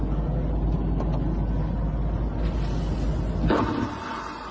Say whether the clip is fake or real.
real